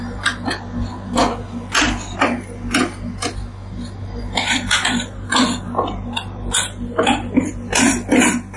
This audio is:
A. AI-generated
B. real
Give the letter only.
B